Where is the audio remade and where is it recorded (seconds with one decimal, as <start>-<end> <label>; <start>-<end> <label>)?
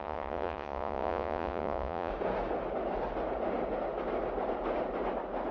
0.0-2.1 remade; 2.1-5.5 recorded